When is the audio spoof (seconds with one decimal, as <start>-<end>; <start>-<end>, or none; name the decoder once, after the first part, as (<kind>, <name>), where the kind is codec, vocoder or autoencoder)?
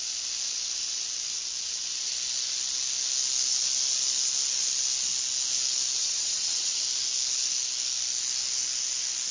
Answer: 6.0-6.8 (vocoder, WaveNeXt)